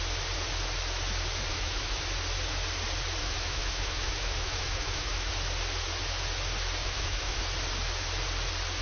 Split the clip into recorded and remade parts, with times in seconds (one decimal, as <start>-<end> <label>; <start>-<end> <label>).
0.0-1.5 recorded; 1.5-2.0 remade; 2.0-3.2 recorded; 3.2-5.3 remade; 5.3-6.8 recorded; 6.8-7.4 remade; 7.4-8.8 recorded